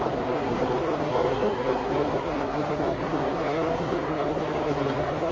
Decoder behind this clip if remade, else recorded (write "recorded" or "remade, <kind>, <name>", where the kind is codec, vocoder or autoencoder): remade, codec, SNAC